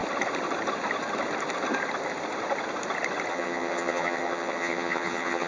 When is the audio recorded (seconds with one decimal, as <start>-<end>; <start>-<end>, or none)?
0.0-3.3